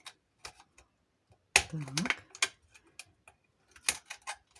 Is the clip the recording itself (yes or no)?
yes